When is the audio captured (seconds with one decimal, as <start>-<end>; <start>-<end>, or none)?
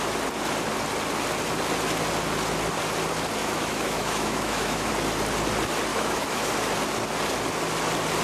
0.0-3.4; 4.9-5.9; 6.5-8.2